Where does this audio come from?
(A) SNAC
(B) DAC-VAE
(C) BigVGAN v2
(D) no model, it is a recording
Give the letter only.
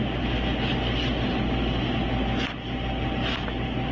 D